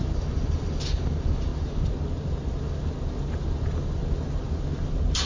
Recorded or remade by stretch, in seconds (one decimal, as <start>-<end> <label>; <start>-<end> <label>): 0.0-5.3 recorded